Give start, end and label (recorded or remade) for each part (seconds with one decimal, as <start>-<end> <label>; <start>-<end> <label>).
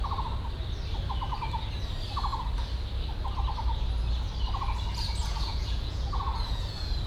0.0-5.2 recorded; 5.2-7.1 remade